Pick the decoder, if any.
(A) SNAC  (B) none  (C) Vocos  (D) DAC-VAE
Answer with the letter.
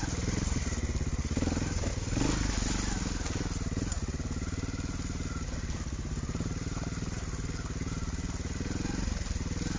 B